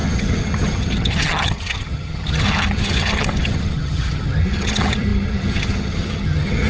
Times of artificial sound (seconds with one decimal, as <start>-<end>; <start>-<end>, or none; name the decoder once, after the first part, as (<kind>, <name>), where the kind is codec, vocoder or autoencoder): 0.0-6.7 (vocoder, HiFi-GAN)